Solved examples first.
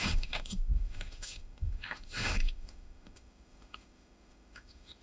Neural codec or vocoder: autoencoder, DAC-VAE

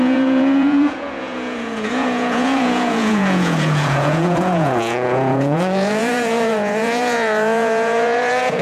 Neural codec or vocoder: vocoder, Vocos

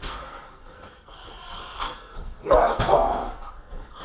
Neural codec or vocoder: codec, SNAC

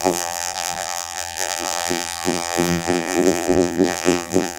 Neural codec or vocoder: vocoder, BigVGAN v2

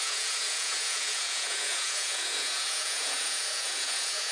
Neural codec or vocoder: vocoder, Vocos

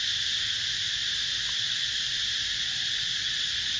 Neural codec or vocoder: none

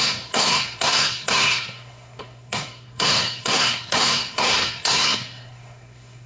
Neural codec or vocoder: codec, SNAC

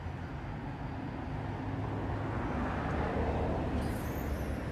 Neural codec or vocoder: none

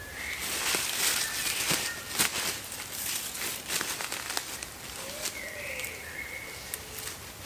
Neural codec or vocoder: none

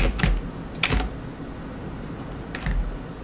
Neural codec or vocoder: none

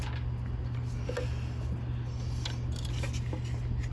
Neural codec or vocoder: none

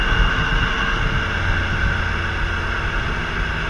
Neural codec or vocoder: none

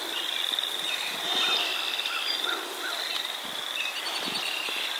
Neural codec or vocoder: none